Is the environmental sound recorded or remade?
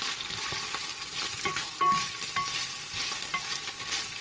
recorded